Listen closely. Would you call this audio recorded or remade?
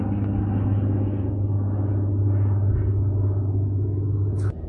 recorded